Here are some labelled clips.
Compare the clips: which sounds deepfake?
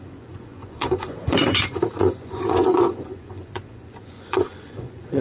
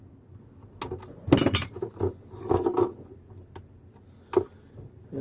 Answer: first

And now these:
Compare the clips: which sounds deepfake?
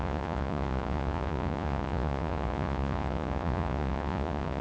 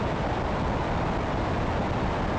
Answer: first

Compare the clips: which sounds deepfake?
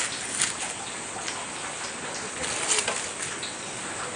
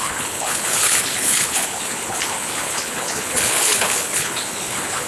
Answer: second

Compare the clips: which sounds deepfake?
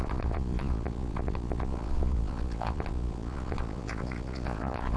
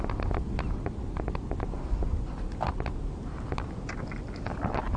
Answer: first